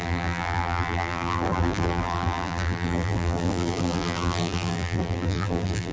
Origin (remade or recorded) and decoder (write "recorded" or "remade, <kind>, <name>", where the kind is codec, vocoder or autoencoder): remade, vocoder, BigVGAN v2